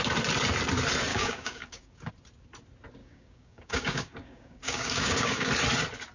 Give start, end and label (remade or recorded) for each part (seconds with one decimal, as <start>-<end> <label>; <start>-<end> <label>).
0.0-1.1 recorded; 1.1-2.1 remade; 2.1-3.0 recorded; 3.0-5.5 remade; 5.5-6.1 recorded